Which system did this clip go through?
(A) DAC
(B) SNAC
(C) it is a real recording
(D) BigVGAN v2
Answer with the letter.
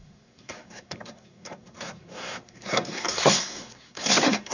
B